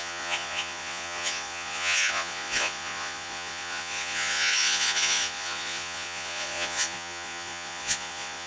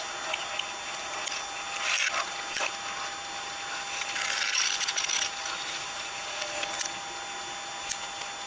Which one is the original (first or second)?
second